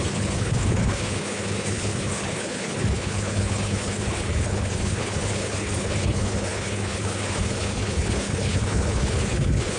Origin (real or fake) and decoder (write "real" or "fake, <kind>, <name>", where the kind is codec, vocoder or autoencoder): fake, codec, HILCodec